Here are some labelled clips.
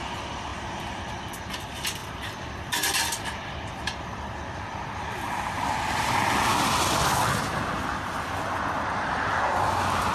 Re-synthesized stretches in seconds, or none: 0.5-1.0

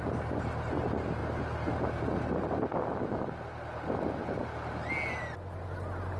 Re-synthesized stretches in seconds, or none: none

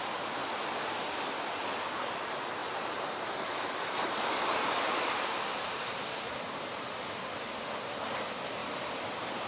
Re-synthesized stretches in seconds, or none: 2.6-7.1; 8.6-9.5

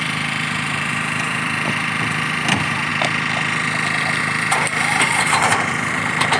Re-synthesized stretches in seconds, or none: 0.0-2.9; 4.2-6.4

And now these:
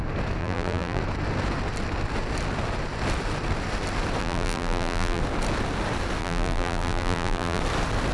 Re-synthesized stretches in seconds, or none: 0.4-1.0; 4.2-5.2; 6.2-7.6

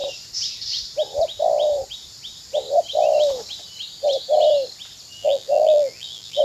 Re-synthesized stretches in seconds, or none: 5.2-6.4